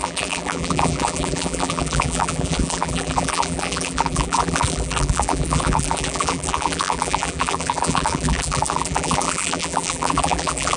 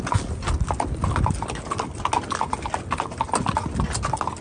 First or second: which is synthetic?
first